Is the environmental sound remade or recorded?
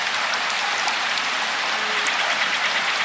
recorded